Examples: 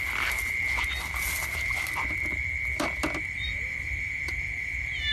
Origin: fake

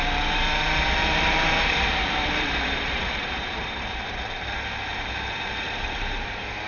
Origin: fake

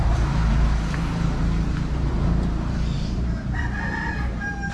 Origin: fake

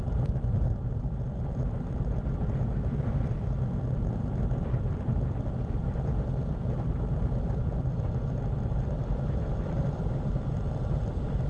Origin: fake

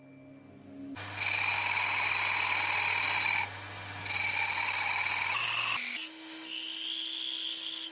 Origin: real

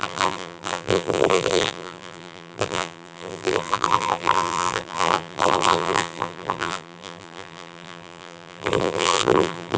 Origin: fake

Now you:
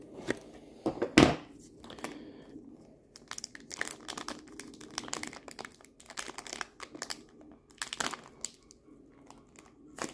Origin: real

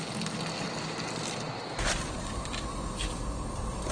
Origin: real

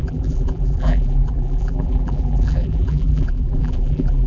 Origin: fake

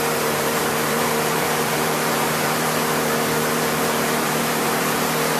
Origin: fake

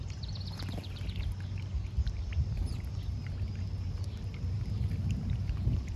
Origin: real